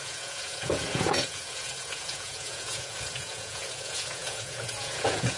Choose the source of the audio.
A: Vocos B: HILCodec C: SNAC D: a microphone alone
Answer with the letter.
A